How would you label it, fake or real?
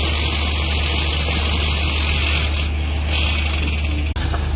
real